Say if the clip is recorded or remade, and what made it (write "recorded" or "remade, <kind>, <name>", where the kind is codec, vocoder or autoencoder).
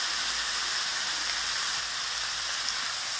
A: recorded